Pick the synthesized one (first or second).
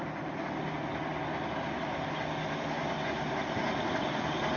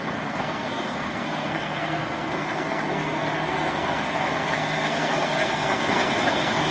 second